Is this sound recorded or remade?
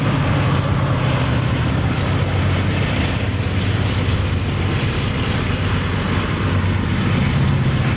recorded